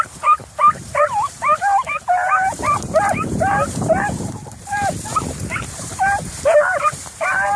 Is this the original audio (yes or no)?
no